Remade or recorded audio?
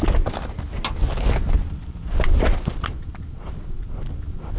recorded